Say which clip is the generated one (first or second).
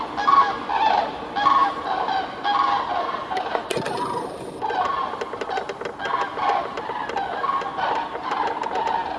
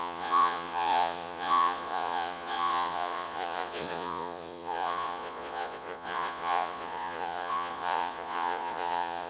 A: second